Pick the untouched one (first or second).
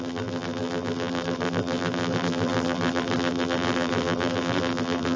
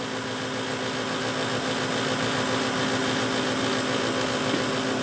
second